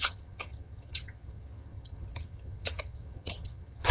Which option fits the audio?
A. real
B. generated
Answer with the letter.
B